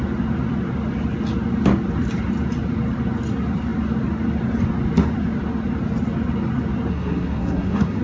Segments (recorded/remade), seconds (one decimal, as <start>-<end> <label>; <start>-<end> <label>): 0.0-6.9 recorded; 6.9-8.0 remade